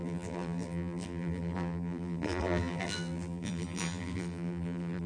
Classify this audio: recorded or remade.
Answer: remade